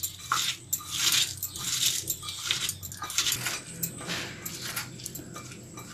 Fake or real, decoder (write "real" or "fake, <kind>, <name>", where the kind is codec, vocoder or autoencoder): real